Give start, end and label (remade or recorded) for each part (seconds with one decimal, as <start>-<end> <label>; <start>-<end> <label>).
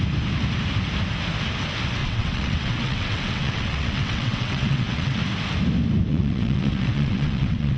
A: 0.0-2.0 recorded; 2.0-5.2 remade; 5.2-6.1 recorded; 6.1-7.8 remade